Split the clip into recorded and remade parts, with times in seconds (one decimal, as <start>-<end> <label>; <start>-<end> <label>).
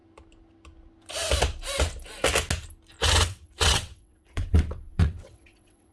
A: 0.0-3.1 recorded; 3.1-5.9 remade